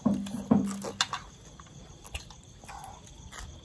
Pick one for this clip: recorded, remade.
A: recorded